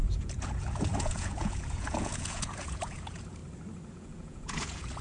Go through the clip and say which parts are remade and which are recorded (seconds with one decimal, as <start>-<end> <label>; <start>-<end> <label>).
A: 0.0-3.4 remade; 3.4-3.9 recorded; 3.9-5.0 remade